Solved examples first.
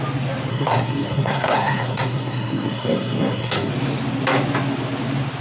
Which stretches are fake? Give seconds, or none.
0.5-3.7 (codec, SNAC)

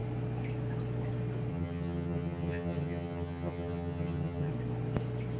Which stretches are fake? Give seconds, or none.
1.5-4.5 (vocoder, HiFi-GAN)

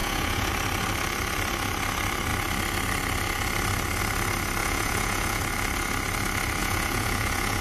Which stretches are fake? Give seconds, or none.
0.0-0.5 (vocoder, Vocos); 4.6-5.4; 6.6-7.6

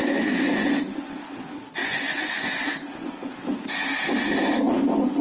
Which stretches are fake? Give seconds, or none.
0.0-1.2 (vocoder, Vocos); 1.8-2.7